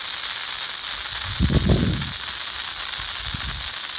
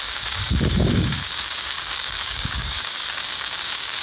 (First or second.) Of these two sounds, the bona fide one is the first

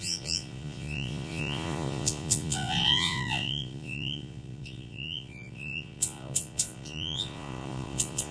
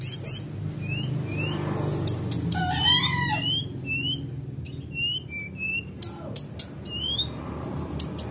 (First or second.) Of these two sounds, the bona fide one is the second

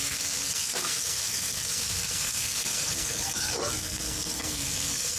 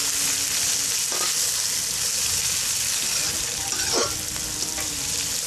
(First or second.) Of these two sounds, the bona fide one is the second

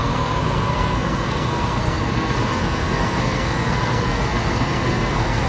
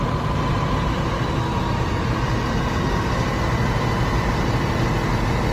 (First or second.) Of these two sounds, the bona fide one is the second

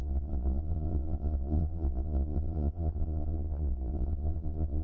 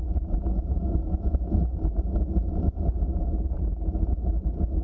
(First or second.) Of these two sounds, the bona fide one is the second